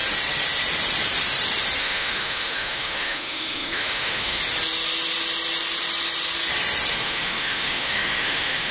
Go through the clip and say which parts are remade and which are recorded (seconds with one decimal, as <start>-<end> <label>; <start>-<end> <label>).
0.0-1.8 recorded; 1.8-4.4 remade; 4.4-6.9 recorded; 6.9-8.7 remade